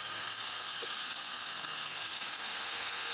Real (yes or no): no